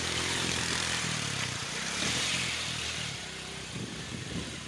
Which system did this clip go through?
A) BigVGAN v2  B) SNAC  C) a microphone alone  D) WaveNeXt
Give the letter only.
A